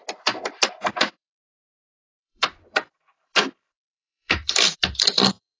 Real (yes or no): no